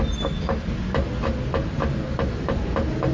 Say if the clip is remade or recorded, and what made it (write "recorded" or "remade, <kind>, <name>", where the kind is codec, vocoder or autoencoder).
recorded